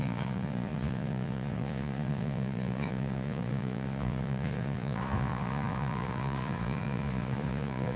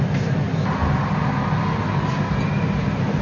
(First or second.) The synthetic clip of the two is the first